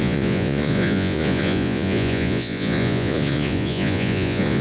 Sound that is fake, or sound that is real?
fake